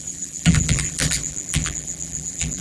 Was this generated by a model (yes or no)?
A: yes